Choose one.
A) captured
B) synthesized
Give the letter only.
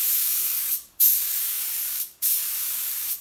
B